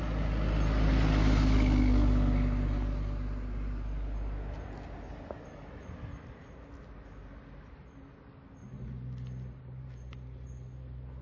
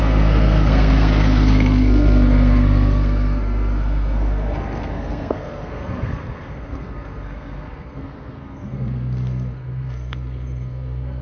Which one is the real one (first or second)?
first